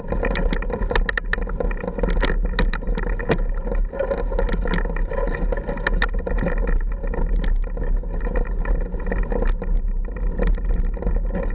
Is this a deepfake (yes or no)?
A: no